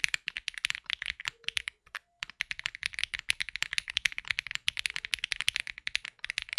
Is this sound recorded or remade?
recorded